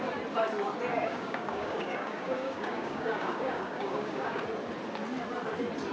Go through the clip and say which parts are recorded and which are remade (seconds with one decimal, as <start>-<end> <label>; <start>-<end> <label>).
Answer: 0.0-0.9 recorded; 0.9-4.4 remade; 4.4-5.9 recorded